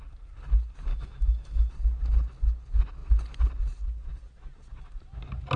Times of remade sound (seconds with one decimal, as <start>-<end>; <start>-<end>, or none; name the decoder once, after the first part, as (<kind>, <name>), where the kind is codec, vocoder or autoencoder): 0.9-1.7 (autoencoder, DAC-VAE)